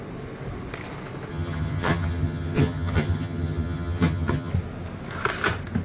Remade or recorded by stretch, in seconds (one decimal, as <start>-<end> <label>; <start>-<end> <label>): 0.0-1.3 recorded; 1.3-4.5 remade; 4.5-5.8 recorded